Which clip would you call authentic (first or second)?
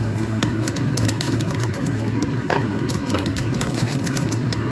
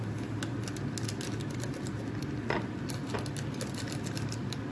second